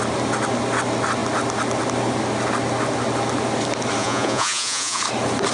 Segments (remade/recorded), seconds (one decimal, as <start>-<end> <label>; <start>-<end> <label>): 0.0-4.0 recorded; 4.0-5.0 remade; 5.0-5.5 recorded